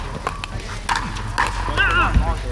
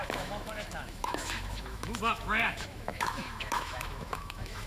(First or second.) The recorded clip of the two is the first